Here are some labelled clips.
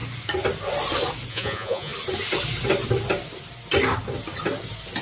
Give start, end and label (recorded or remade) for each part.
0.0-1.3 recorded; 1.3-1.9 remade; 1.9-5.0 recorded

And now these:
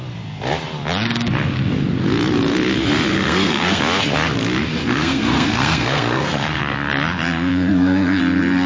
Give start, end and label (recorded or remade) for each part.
0.0-3.1 recorded; 3.1-3.8 remade; 3.8-4.8 recorded; 4.8-6.6 remade; 6.6-7.5 recorded; 7.5-8.2 remade; 8.2-8.7 recorded

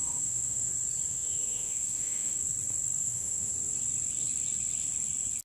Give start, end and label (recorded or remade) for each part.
0.0-0.7 remade; 0.7-1.1 recorded; 1.1-2.4 remade; 2.4-3.0 recorded; 3.0-3.5 remade; 3.5-5.4 recorded